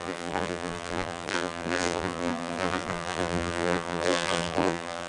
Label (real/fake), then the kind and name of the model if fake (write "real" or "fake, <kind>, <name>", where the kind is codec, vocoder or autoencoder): fake, vocoder, BigVGAN v2